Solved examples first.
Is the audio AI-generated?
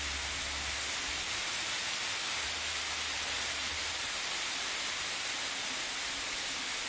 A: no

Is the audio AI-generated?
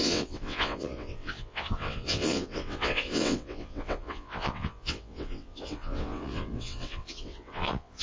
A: yes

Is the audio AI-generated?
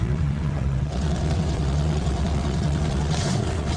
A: yes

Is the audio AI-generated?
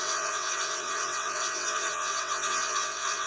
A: yes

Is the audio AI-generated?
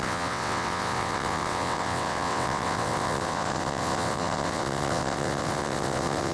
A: yes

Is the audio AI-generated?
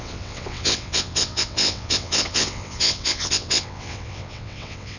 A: yes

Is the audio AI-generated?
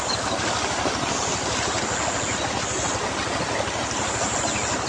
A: no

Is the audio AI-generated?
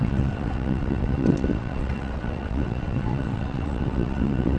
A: yes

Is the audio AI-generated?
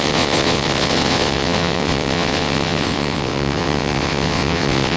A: yes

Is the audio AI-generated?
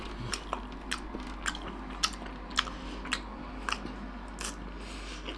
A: no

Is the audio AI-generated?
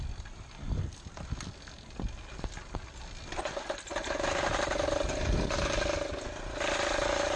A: no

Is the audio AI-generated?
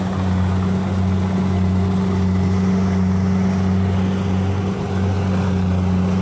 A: no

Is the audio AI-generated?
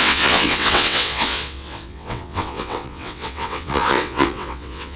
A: yes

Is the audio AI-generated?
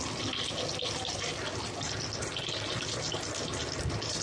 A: no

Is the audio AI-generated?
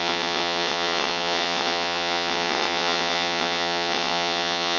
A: yes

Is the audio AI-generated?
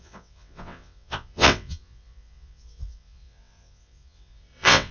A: yes